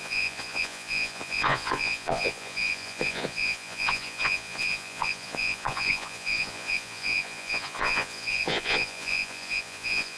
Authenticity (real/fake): fake